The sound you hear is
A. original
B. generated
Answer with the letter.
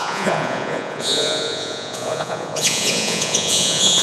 B